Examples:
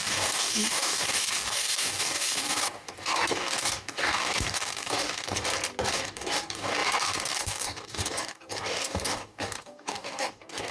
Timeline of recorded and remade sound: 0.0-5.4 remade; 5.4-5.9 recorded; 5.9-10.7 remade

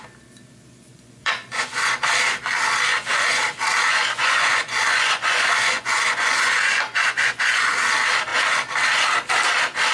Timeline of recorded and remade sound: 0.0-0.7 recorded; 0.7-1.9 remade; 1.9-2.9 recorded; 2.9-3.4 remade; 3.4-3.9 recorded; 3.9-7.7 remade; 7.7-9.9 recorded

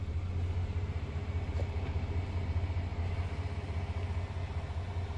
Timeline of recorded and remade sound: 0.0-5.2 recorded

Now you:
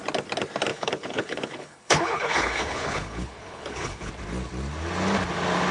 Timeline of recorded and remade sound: 0.0-0.7 recorded; 0.7-4.1 remade; 4.1-5.7 recorded

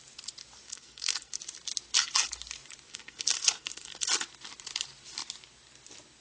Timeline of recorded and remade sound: 0.0-0.7 recorded; 0.7-1.4 remade; 1.4-2.9 recorded; 2.9-4.1 remade; 4.1-6.2 recorded

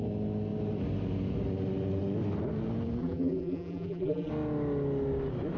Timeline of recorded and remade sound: 0.0-3.0 recorded; 3.0-4.3 remade; 4.3-5.6 recorded